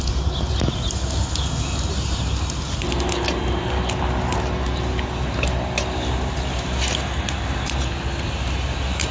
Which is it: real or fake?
real